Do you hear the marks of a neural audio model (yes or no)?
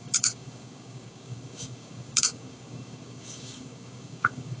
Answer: yes